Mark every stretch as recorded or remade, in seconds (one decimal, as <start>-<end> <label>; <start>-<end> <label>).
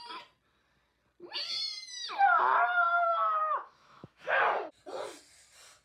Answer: 0.0-2.9 recorded; 2.9-4.4 remade; 4.4-5.8 recorded